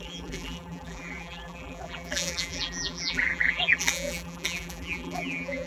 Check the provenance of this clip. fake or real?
fake